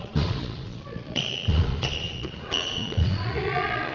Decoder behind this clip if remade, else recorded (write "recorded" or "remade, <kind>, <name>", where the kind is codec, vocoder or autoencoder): remade, vocoder, Vocos